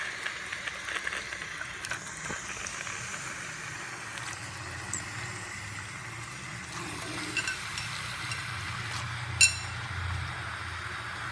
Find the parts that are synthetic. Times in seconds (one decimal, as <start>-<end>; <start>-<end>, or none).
none